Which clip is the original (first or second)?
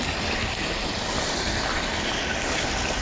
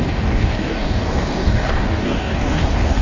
first